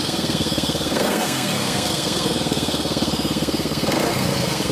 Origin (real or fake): fake